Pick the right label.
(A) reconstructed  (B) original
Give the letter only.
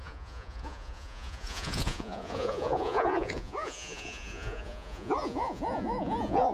A